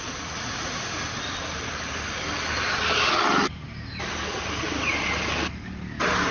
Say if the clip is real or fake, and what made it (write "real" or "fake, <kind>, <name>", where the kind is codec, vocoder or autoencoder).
real